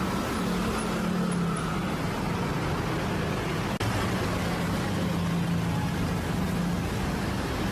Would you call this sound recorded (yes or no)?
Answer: yes